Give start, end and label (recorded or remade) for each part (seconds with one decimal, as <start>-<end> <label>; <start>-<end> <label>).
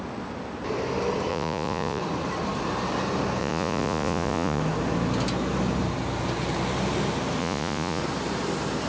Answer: 0.0-1.3 recorded; 1.3-2.0 remade; 2.0-3.4 recorded; 3.4-4.6 remade; 4.6-7.4 recorded; 7.4-8.0 remade; 8.0-8.9 recorded